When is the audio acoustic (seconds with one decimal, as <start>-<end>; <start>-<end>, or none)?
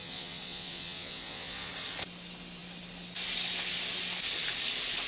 1.7-5.1